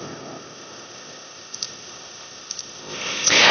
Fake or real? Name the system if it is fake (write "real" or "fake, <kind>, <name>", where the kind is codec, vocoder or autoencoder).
fake, codec, ZipCodec